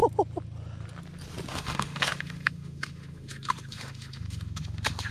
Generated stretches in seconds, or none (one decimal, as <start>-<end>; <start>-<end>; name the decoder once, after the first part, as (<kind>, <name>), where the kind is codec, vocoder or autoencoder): 1.5-5.1 (autoencoder, DAC-VAE)